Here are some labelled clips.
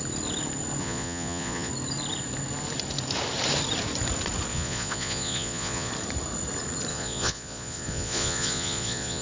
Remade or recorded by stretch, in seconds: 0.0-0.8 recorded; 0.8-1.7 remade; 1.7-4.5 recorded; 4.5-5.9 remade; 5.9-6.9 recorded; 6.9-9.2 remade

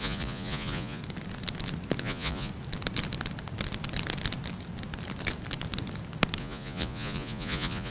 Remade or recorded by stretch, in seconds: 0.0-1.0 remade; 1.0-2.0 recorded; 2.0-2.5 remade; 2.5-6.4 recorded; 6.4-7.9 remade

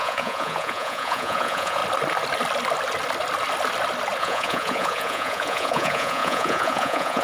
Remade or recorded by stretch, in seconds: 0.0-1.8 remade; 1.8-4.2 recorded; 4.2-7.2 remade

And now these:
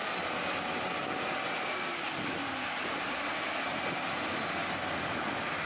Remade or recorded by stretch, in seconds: 0.0-5.7 recorded

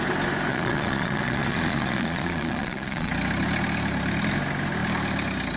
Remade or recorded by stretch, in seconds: 0.0-0.5 recorded; 0.5-3.1 remade; 3.1-5.6 recorded

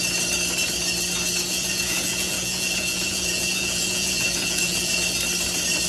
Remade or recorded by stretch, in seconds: 0.0-1.5 recorded; 1.5-5.0 remade; 5.0-5.9 recorded